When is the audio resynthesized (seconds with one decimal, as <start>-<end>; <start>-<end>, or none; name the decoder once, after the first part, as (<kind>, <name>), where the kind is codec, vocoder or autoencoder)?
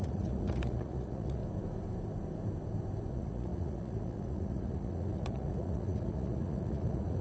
0.0-1.4 (vocoder, Vocos); 3.1-7.2